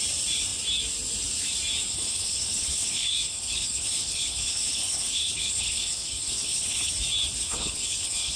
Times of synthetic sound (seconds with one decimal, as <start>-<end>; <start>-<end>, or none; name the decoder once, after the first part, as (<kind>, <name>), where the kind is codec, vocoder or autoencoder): 1.9-6.9 (codec, HILCodec); 7.4-8.4